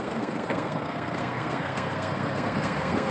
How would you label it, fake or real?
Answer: fake